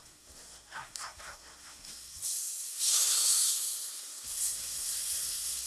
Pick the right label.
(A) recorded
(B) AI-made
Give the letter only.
B